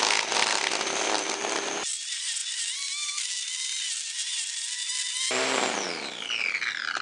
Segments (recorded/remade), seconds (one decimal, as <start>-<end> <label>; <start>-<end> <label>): 0.0-7.0 recorded